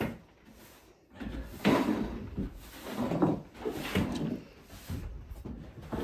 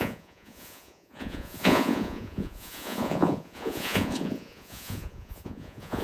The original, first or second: first